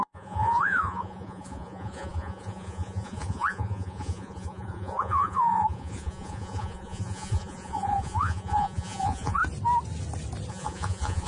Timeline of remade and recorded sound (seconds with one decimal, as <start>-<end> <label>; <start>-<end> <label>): 0.0-9.4 remade; 9.4-10.5 recorded; 10.5-11.3 remade